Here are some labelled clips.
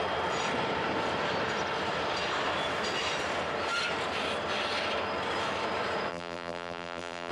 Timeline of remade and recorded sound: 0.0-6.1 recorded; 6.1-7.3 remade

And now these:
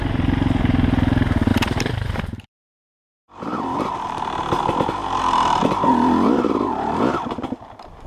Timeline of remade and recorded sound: 0.0-1.5 recorded; 1.5-4.6 remade; 4.6-5.0 recorded; 5.0-5.6 remade; 5.6-8.1 recorded

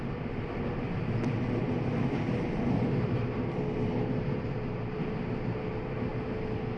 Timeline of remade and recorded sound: 0.0-6.8 recorded

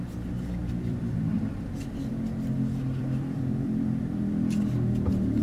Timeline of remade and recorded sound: 0.0-0.6 recorded; 0.6-2.1 remade; 2.1-3.0 recorded; 3.0-4.6 remade; 4.6-5.4 recorded